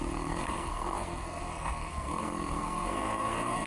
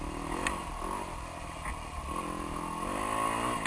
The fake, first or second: first